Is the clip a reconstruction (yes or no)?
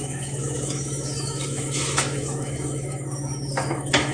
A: yes